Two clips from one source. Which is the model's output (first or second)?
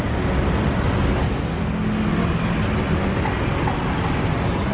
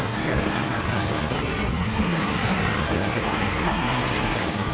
second